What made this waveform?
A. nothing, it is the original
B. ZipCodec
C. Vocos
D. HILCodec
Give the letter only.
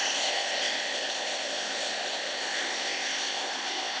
B